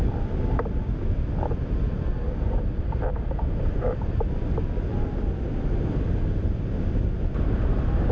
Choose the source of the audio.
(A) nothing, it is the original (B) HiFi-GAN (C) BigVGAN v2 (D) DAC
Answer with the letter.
A